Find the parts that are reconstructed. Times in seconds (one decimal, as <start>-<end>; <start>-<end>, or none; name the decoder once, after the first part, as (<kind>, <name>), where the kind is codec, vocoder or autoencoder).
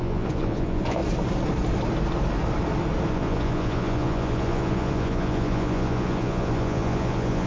0.0-1.0 (vocoder, Vocos); 3.1-7.5